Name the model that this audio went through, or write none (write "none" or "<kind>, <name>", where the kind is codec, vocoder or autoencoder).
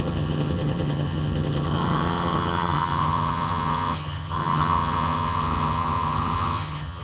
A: vocoder, HiFi-GAN